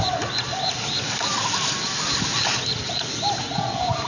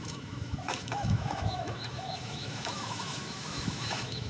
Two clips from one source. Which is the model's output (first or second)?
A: second